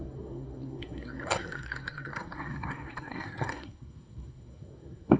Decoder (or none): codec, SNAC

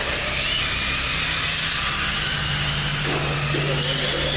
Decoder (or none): none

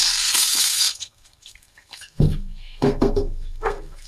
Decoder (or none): codec, SNAC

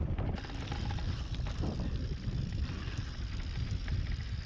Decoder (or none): none